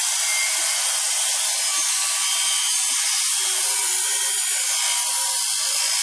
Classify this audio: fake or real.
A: real